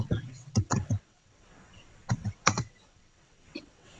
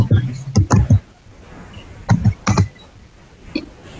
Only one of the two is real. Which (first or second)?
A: second